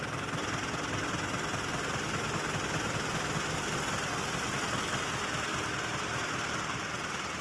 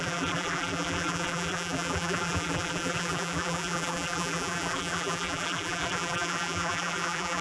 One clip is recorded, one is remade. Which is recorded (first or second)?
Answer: first